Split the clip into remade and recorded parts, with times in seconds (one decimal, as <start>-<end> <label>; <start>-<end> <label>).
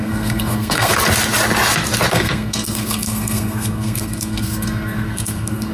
0.0-0.9 remade; 0.9-2.1 recorded; 2.1-5.7 remade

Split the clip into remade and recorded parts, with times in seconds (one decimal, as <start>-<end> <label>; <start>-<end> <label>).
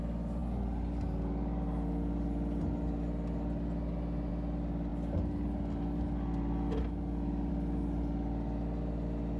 0.0-9.4 recorded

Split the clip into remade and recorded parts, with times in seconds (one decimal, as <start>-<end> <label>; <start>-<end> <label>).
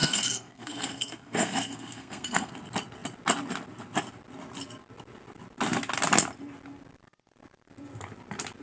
0.0-2.5 remade; 2.5-8.6 recorded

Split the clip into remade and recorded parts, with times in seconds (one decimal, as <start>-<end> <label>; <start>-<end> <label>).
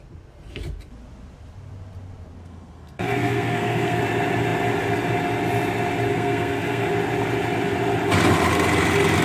0.0-2.4 recorded; 2.4-4.0 remade; 4.0-6.1 recorded; 6.1-6.9 remade; 6.9-9.2 recorded